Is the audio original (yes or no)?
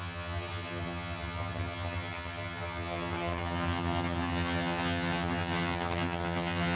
no